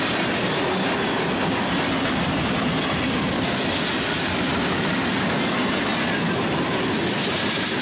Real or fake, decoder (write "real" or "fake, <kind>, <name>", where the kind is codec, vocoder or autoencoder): real